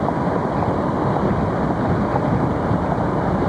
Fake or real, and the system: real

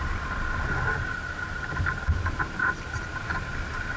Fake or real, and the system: real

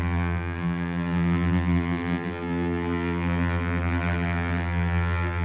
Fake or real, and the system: fake, vocoder, BigVGAN v2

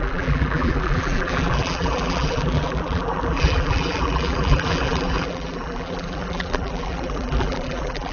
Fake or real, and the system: fake, vocoder, BigVGAN v2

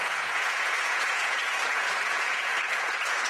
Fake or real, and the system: fake, vocoder, Vocos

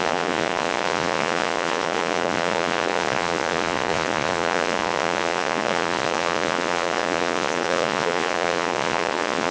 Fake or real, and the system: fake, vocoder, Vocos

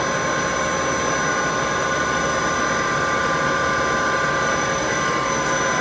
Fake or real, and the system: real